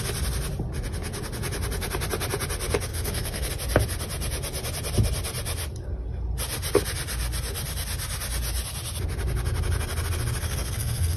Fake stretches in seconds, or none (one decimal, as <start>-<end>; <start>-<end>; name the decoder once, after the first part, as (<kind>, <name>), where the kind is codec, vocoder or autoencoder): 2.9-3.5 (codec, SNAC); 10.4-11.2